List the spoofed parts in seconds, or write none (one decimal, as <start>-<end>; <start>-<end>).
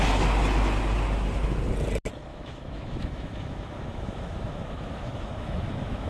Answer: 2.3-6.1